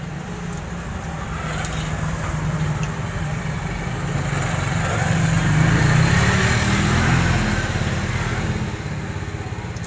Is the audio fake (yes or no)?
no